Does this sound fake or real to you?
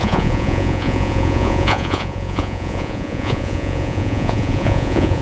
fake